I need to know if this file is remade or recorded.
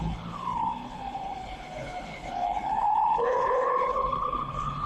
remade